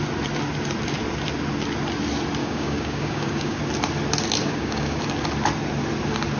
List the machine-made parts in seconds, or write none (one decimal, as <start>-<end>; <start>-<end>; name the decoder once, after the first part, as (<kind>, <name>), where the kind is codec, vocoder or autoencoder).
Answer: 2.4-3.6 (codec, DAC); 4.4-5.0